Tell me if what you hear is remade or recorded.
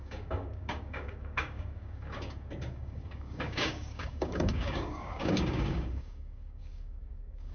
remade